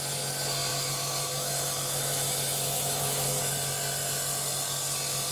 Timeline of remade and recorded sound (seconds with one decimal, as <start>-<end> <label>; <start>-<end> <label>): 0.0-0.7 recorded; 0.7-3.4 remade; 3.4-5.3 recorded